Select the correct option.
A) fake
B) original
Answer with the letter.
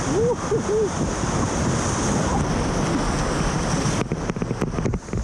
B